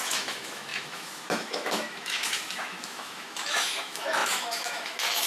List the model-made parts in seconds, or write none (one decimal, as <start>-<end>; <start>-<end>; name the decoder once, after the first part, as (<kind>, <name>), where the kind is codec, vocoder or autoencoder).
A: 0.0-5.3 (autoencoder, DAC-VAE)